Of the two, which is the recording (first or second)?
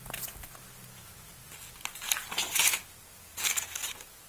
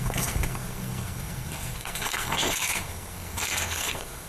first